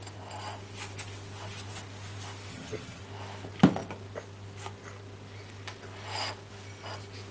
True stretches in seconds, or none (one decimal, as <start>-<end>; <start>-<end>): 0.0-2.5; 3.0-7.3